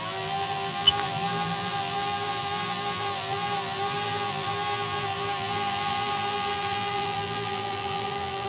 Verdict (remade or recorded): remade